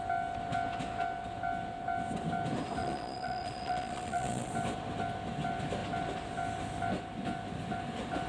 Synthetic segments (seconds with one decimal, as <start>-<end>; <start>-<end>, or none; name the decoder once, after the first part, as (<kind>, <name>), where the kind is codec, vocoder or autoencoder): 2.8-4.5 (vocoder, Vocos)